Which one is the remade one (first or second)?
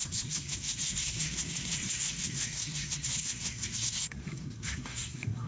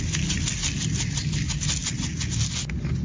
first